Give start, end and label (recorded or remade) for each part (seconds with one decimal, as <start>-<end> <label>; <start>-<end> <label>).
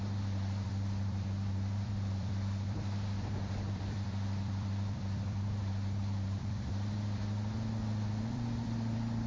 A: 0.0-7.2 remade; 7.2-8.2 recorded; 8.2-9.3 remade